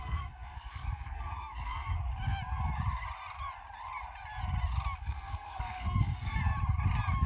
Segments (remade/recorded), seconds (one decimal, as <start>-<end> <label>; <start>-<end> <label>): 0.0-2.0 remade; 2.0-5.0 recorded; 5.0-6.4 remade; 6.4-7.3 recorded